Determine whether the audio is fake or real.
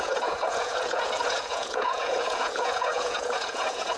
fake